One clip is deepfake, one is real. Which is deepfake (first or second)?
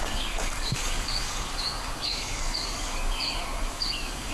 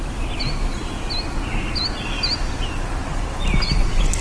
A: first